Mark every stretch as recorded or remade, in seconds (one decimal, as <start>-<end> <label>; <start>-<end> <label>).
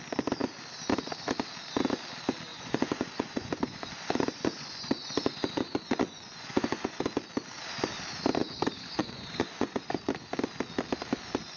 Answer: 0.0-2.5 recorded; 2.5-7.0 remade; 7.0-8.4 recorded; 8.4-10.0 remade; 10.0-11.6 recorded